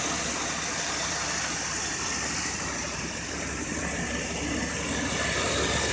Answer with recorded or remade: remade